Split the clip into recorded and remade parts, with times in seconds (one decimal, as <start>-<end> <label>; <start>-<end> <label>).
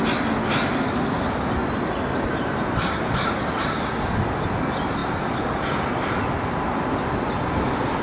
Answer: 0.0-8.0 recorded